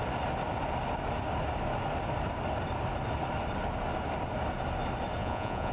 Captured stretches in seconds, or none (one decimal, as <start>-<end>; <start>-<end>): 0.0-5.2